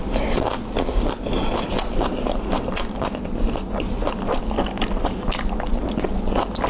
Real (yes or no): yes